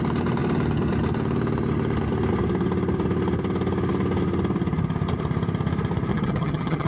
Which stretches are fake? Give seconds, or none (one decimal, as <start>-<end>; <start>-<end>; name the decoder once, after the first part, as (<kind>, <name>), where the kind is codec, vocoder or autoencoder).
6.1-6.9 (vocoder, HiFi-GAN)